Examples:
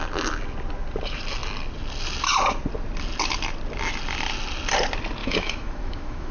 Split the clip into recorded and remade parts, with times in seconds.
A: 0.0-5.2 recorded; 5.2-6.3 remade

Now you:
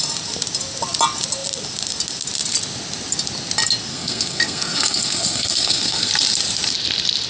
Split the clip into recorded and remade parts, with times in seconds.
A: 0.0-3.9 recorded; 3.9-6.1 remade; 6.1-7.3 recorded

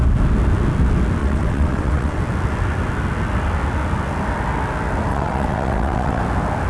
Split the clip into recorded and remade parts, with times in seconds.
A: 0.0-1.2 recorded; 1.2-2.2 remade; 2.2-5.1 recorded; 5.1-6.2 remade; 6.2-6.7 recorded

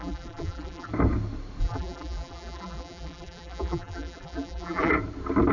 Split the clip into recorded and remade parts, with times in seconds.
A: 0.0-0.9 remade; 0.9-1.6 recorded; 1.6-4.9 remade; 4.9-5.5 recorded

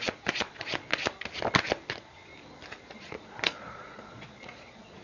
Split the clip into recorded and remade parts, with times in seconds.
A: 0.0-1.0 remade; 1.0-1.9 recorded; 1.9-2.3 remade; 2.3-2.8 recorded; 2.8-5.0 remade

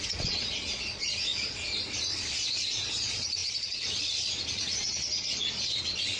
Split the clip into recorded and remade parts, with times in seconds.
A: 0.0-6.2 remade